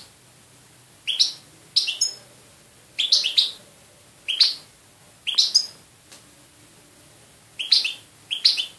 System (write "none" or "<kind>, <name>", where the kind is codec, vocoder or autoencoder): none